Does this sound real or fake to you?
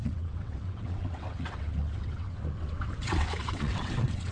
fake